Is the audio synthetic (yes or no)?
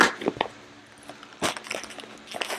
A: no